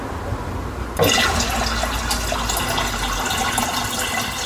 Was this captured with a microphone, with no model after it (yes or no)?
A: yes